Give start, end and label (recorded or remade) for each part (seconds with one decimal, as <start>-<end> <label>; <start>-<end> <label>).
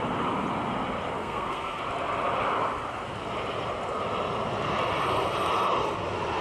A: 0.0-1.2 recorded; 1.2-1.8 remade; 1.8-6.4 recorded